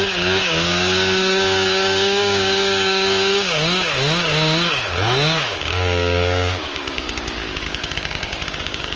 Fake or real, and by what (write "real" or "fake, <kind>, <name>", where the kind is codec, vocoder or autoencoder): fake, codec, DAC